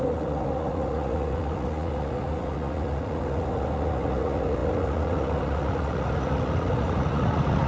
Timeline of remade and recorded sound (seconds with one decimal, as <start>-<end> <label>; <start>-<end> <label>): 0.0-7.7 remade